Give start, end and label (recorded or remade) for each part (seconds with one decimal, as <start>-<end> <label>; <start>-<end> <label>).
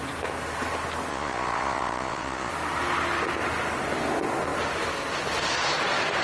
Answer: 0.0-1.1 recorded; 1.1-2.5 remade; 2.5-6.2 recorded